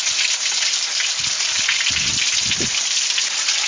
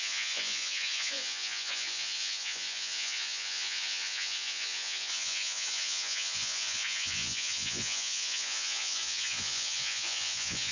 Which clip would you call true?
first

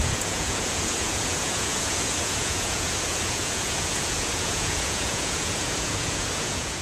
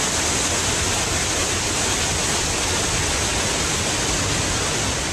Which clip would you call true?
second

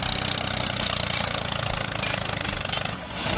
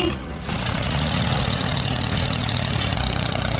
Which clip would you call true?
first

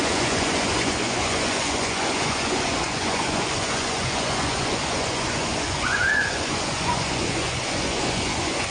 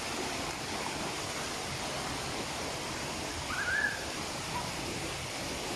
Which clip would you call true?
second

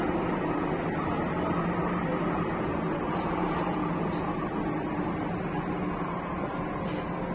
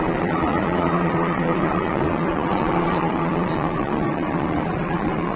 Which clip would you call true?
first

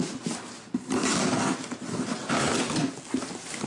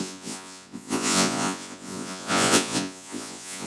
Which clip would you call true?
first